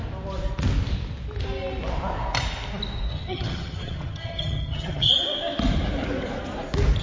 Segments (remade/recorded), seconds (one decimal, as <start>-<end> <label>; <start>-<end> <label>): 0.0-3.1 recorded; 3.1-5.1 remade; 5.1-7.0 recorded